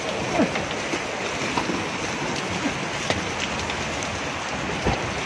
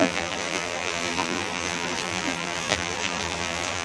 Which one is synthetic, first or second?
second